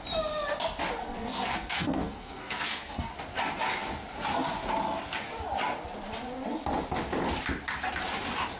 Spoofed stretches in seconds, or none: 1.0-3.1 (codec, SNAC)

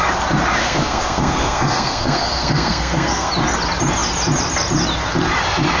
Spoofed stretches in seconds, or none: 0.6-3.3 (codec, SNAC)

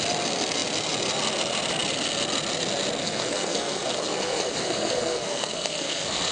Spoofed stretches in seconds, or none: 3.0-6.3 (codec, SNAC)

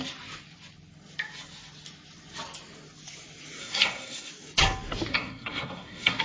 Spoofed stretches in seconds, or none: 3.6-4.3 (codec, SNAC); 5.1-6.2

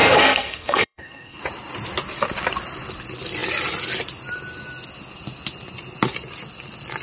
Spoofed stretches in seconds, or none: 0.0-1.4 (codec, SNAC)